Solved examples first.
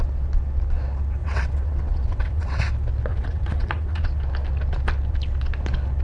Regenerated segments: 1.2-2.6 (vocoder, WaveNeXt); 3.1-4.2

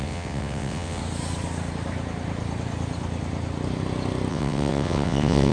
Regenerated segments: 0.0-1.0 (vocoder, WaveNeXt); 4.3-5.5

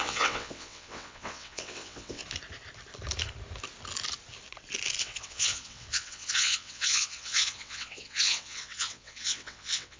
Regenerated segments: 0.0-2.2 (vocoder, WaveNeXt); 5.0-10.0